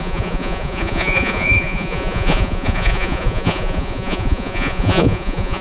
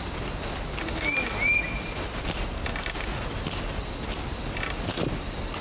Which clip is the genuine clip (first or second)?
second